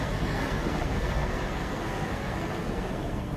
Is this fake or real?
fake